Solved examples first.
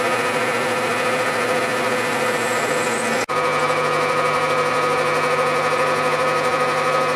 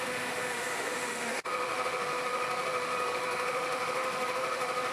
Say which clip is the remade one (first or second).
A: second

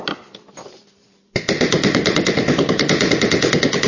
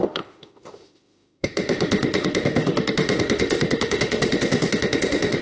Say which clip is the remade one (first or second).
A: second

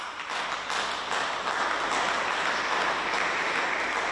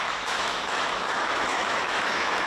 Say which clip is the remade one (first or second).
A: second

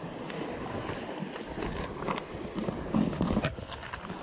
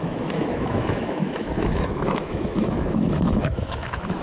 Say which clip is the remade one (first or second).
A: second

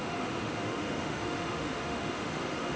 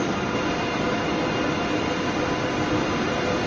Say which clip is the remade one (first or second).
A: first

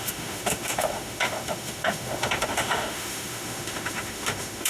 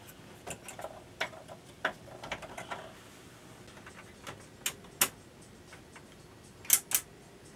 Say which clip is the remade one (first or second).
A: first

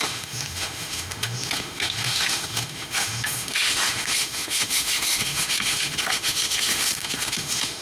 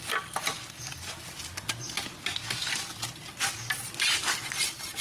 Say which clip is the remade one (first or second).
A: first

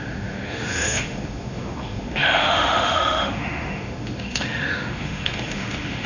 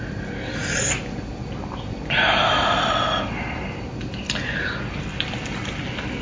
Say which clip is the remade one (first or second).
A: first